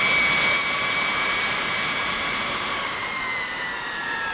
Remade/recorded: remade